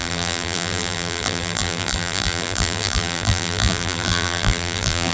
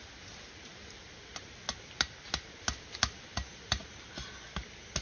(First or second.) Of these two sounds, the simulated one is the first